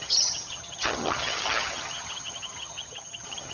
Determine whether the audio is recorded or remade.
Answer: remade